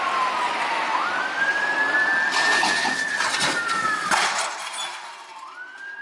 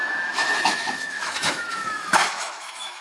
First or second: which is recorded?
first